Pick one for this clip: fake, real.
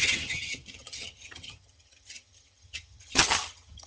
fake